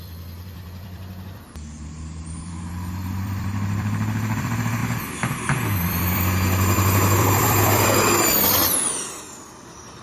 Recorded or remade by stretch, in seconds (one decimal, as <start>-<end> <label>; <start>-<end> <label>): 0.0-4.8 remade; 4.8-5.9 recorded; 5.9-8.6 remade; 8.6-9.1 recorded; 9.1-10.0 remade